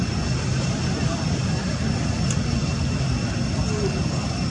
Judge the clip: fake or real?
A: real